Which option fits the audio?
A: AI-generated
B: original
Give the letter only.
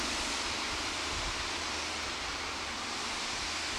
A